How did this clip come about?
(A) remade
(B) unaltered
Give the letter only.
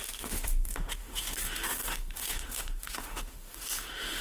A